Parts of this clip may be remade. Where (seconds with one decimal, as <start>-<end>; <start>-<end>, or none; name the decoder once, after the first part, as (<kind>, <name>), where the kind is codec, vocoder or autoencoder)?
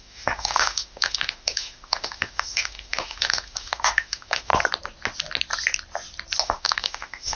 0.0-4.5 (autoencoder, DAC-VAE); 6.4-7.4